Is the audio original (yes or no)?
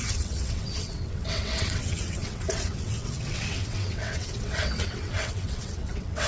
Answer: no